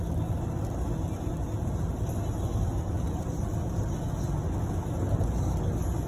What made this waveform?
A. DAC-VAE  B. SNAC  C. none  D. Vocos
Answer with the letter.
C